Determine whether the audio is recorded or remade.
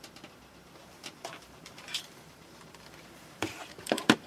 remade